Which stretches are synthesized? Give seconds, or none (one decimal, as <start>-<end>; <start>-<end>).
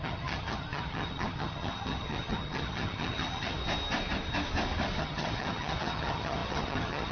0.0-3.6; 5.0-7.1